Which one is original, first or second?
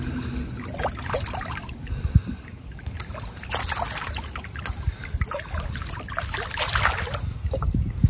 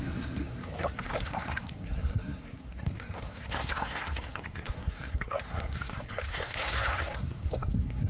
first